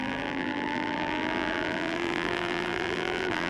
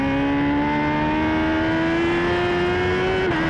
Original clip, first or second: second